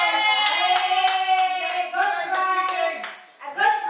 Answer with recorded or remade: recorded